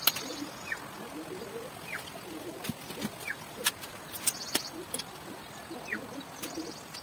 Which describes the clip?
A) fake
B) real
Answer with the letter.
B